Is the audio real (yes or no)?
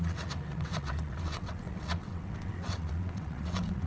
no